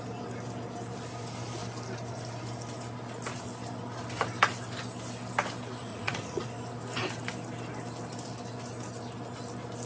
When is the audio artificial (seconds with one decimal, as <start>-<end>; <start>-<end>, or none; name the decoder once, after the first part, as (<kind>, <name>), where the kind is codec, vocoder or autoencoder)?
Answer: 5.9-6.5 (vocoder, Vocos)